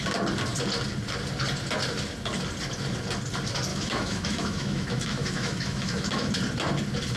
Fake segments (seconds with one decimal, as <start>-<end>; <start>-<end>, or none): 3.7-6.3